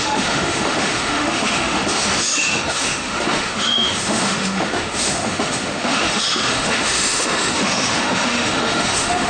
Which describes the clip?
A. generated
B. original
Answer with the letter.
A